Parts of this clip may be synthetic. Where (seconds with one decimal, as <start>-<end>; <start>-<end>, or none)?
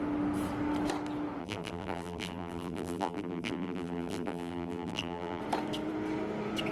1.4-5.4